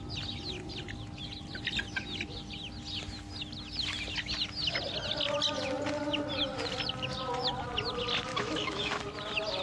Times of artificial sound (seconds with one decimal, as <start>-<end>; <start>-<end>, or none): 8.3-9.0